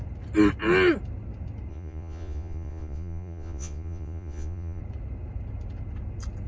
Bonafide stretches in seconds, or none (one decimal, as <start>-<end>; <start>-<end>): 0.0-1.7; 4.8-6.5